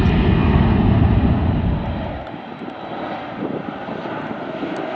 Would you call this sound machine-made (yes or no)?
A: no